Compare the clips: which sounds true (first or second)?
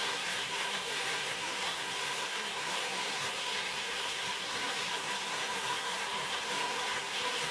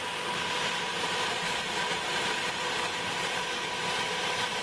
second